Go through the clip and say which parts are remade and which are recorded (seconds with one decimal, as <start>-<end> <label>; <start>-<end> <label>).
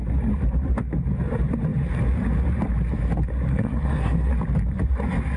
0.0-3.5 recorded; 3.5-4.3 remade; 4.3-5.4 recorded